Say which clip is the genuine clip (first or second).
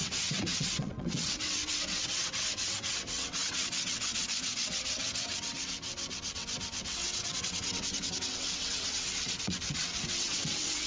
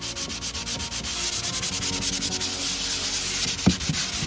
second